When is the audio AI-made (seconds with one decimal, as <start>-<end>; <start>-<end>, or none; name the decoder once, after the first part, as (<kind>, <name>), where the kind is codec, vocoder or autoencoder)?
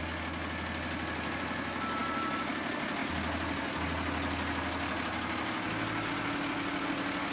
none